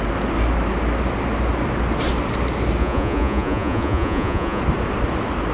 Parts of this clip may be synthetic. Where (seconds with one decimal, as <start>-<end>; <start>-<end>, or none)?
2.8-4.6